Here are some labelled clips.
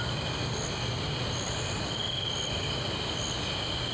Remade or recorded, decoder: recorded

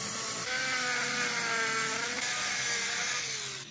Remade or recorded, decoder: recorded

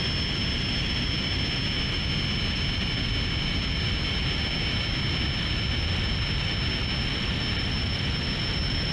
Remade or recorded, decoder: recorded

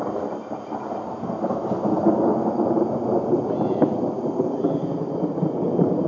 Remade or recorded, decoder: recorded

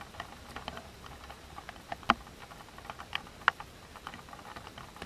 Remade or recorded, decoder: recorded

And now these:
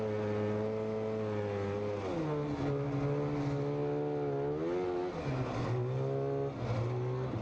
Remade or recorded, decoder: recorded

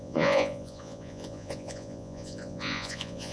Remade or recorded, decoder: remade, vocoder, Vocos